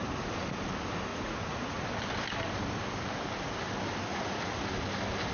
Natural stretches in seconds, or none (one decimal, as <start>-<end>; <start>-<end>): 0.0-1.1; 1.8-4.1; 4.6-5.3